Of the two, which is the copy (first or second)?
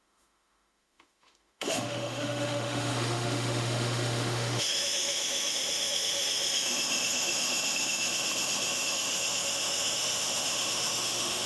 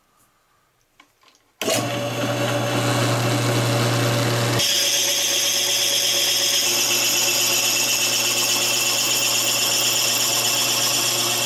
first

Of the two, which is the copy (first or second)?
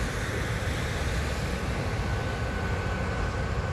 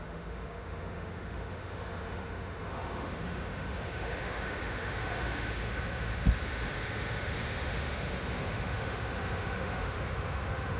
second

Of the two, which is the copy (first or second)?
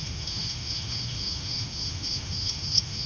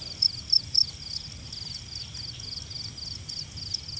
first